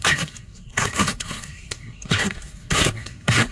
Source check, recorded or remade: remade